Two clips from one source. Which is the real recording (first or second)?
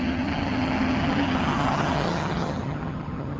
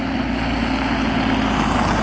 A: second